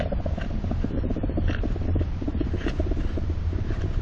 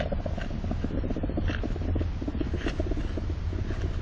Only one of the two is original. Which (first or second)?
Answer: second